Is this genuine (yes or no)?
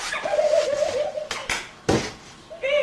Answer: yes